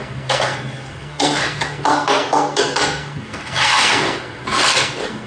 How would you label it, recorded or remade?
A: remade